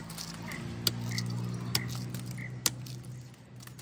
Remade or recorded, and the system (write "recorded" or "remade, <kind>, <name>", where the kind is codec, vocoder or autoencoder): recorded